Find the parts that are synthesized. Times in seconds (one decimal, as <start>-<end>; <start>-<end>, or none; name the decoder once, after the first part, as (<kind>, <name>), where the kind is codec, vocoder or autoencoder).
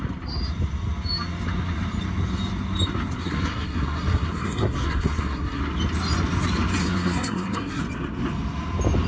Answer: 3.2-5.6 (codec, SNAC); 6.8-7.8